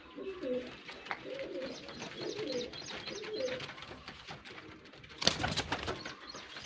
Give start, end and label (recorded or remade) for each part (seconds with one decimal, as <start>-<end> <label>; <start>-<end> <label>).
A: 0.0-6.7 recorded